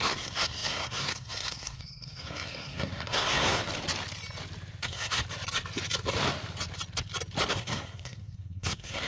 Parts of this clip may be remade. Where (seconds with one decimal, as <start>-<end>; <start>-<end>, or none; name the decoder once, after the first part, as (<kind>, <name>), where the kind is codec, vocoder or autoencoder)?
0.0-3.6 (codec, SNAC); 4.8-5.2; 7.5-9.1